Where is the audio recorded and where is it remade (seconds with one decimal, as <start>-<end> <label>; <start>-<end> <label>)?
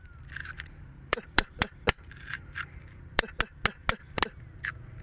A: 0.0-0.4 recorded; 0.4-3.4 remade; 3.4-5.0 recorded